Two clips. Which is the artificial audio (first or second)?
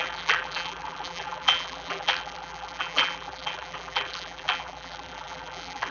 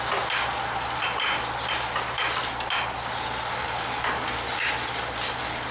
first